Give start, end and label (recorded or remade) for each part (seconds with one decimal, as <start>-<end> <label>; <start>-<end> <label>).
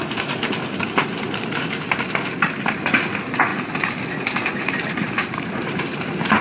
0.0-6.4 recorded